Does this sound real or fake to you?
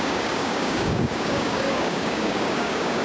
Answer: fake